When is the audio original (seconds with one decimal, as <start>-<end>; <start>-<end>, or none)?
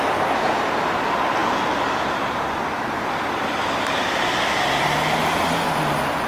0.0-6.3